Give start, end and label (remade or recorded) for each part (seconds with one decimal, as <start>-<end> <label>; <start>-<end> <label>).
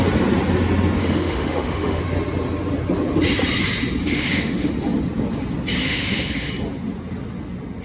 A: 0.0-1.0 recorded; 1.0-2.0 remade; 2.0-4.0 recorded; 4.0-4.7 remade; 4.7-5.8 recorded; 5.8-6.5 remade; 6.5-7.8 recorded